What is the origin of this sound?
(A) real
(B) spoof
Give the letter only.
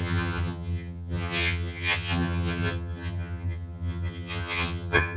B